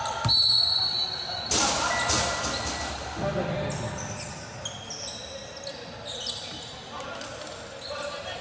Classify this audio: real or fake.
real